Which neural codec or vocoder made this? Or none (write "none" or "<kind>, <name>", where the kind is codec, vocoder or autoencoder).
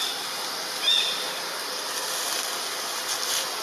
none